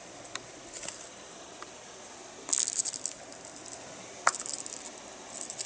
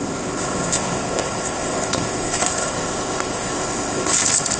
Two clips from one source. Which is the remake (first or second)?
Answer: second